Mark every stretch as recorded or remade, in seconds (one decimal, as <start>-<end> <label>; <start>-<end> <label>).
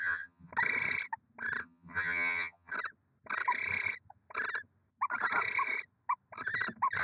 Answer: 0.0-0.5 remade; 0.5-1.6 recorded; 1.6-2.7 remade; 2.7-7.0 recorded